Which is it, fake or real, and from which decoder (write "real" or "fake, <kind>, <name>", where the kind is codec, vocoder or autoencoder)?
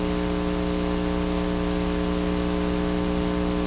real